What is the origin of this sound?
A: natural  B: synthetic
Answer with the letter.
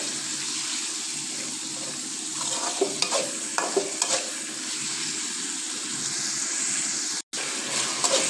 A